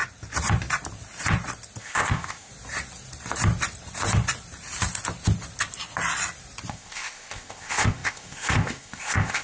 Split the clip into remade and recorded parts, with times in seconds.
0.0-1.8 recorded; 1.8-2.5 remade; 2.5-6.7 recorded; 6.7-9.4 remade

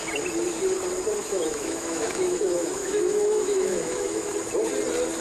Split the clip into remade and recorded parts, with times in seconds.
0.0-1.2 recorded; 1.2-4.3 remade; 4.3-5.2 recorded

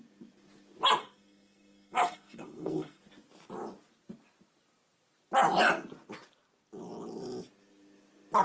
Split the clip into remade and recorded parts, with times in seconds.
0.0-1.0 recorded; 1.0-3.0 remade; 3.0-8.4 recorded